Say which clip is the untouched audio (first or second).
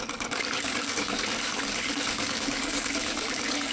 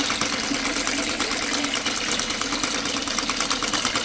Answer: second